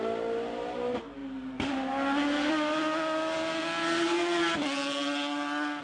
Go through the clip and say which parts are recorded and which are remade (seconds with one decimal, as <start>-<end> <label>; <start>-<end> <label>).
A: 0.0-5.8 recorded